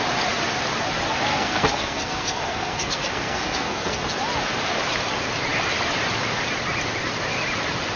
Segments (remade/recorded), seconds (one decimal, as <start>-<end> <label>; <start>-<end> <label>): 0.0-1.3 recorded; 1.3-4.0 remade; 4.0-8.0 recorded